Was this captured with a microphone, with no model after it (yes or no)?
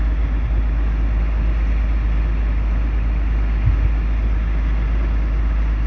yes